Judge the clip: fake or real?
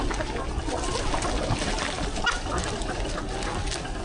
real